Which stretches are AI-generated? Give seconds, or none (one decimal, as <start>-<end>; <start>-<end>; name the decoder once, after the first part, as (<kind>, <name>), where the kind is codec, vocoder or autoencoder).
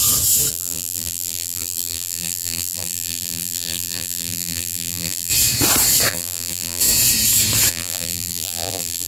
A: 0.5-5.3 (vocoder, BigVGAN v2); 6.1-6.8; 7.7-9.1